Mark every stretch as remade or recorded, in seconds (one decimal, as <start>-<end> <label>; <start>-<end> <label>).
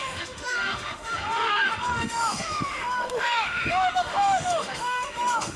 0.0-5.6 remade